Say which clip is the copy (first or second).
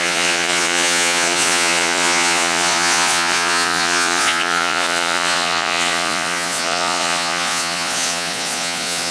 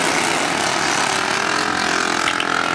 first